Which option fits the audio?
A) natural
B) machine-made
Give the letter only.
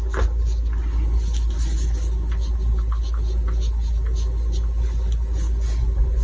A